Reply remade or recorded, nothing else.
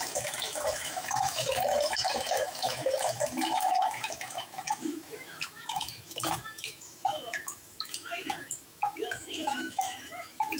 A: remade